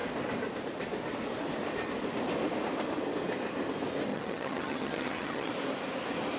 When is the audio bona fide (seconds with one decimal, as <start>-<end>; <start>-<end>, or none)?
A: 0.0-4.1; 5.5-6.4